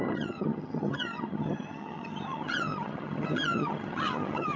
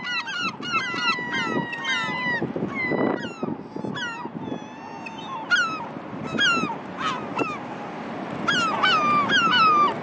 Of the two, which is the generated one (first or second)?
first